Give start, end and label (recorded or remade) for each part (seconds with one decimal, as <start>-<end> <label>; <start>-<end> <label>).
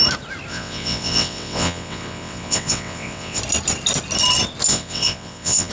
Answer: 0.0-0.5 recorded; 0.5-3.4 remade; 3.4-4.7 recorded; 4.7-5.7 remade